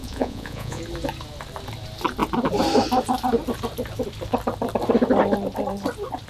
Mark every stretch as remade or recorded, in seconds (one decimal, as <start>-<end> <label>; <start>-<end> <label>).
0.0-0.8 remade; 0.8-6.3 recorded